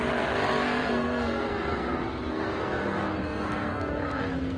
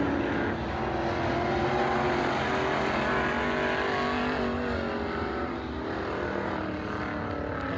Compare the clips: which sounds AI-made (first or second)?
first